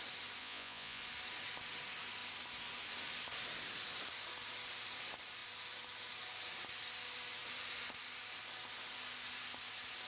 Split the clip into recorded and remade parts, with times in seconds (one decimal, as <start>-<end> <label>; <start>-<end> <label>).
0.0-0.4 recorded; 0.4-1.0 remade; 1.0-10.1 recorded